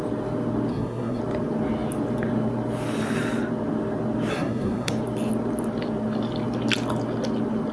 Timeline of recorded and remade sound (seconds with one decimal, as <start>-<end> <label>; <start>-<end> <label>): 0.0-0.7 recorded; 0.7-1.2 remade; 1.2-4.3 recorded; 4.3-4.9 remade; 4.9-7.7 recorded